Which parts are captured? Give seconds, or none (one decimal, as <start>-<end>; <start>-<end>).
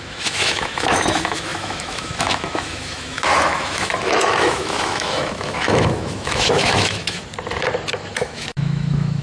7.2-7.9